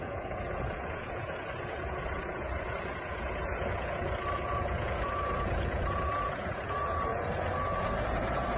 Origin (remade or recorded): remade